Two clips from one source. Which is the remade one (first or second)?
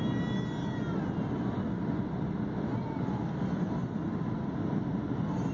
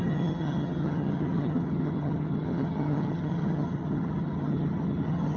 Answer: second